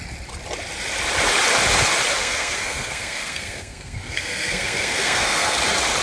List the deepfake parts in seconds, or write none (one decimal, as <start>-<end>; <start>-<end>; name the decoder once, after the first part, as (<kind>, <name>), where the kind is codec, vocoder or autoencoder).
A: 2.2-5.6 (codec, SNAC)